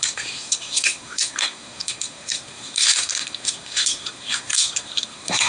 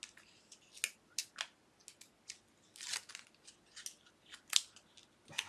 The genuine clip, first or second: second